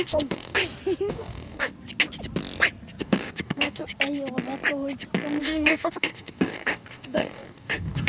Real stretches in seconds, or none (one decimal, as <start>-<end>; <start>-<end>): 0.6-1.1; 1.7-3.0; 3.8-5.4